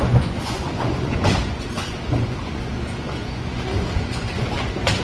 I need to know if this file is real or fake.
fake